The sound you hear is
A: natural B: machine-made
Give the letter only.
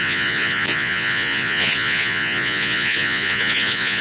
B